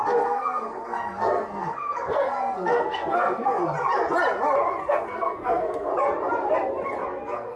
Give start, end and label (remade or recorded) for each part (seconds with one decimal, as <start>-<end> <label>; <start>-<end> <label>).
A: 0.0-3.6 remade; 3.6-4.9 recorded; 4.9-5.9 remade; 5.9-7.0 recorded; 7.0-7.6 remade